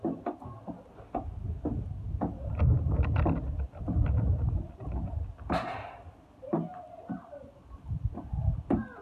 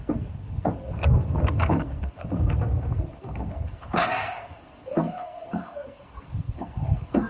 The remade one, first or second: second